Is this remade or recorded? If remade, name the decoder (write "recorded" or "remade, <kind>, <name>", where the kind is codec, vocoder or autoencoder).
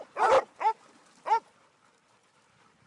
recorded